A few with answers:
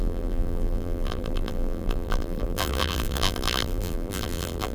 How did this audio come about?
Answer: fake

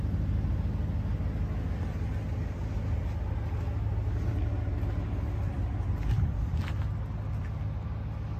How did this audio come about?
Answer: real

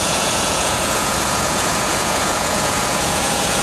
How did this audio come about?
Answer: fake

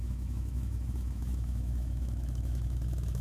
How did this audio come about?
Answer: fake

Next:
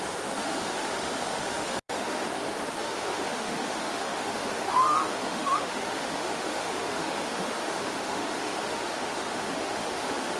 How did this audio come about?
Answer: fake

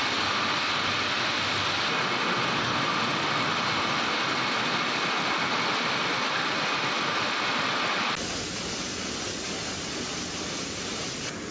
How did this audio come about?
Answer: real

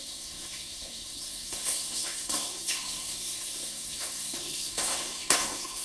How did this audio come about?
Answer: fake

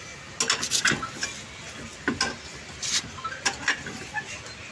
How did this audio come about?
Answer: real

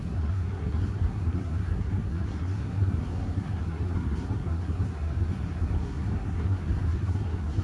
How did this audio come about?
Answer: fake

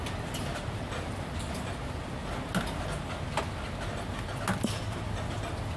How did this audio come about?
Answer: real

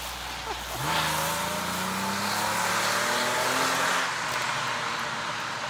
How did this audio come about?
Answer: real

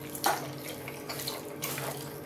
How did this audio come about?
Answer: fake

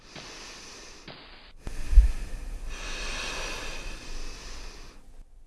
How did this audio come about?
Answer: real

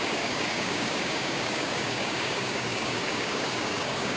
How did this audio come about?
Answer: fake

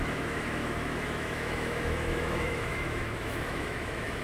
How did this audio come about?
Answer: fake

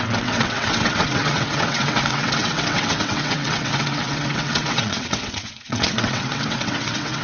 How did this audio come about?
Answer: fake